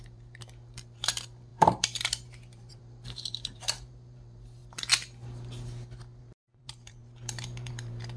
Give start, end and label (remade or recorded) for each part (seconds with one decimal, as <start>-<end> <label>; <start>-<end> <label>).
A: 0.0-4.6 remade; 4.6-6.2 recorded; 6.2-8.2 remade